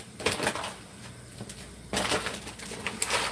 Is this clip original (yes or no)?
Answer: yes